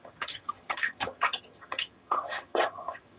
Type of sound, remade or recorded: remade